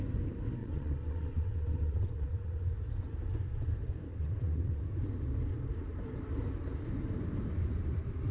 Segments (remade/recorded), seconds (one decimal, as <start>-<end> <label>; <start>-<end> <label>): 0.0-0.6 recorded; 0.6-2.6 remade; 2.6-4.1 recorded; 4.1-4.8 remade; 4.8-8.3 recorded

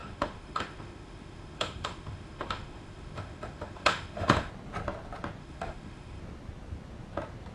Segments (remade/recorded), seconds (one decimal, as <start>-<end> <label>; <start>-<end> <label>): 0.0-4.5 remade; 4.5-5.4 recorded; 5.4-6.2 remade; 6.2-7.5 recorded

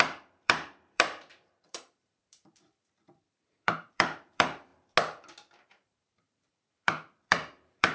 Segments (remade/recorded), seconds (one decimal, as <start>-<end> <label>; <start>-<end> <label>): 0.0-4.7 remade; 4.7-5.6 recorded; 5.6-7.9 remade

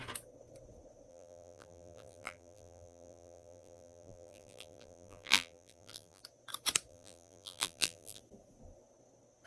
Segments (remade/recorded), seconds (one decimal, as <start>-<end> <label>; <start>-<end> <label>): 0.0-1.1 recorded; 1.1-6.2 remade; 6.2-6.9 recorded; 6.9-8.2 remade; 8.2-9.5 recorded

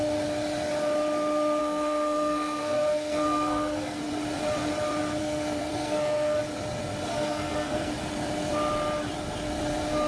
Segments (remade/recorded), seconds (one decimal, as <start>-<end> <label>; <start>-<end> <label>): 0.0-1.6 recorded; 1.6-4.0 remade; 4.0-5.2 recorded; 5.2-6.4 remade; 6.4-7.1 recorded; 7.1-7.9 remade; 7.9-10.1 recorded

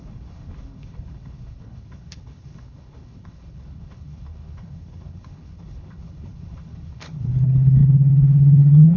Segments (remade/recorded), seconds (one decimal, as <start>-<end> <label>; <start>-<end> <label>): 0.0-9.0 remade